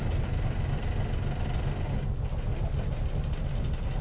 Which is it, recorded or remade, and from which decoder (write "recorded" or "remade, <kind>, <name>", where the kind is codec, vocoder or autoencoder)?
recorded